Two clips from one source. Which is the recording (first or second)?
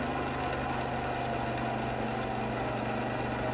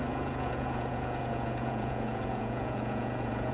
first